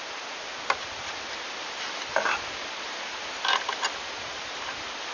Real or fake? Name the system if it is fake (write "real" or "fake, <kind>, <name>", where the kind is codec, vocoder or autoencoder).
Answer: real